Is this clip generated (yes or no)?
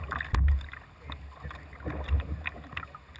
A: no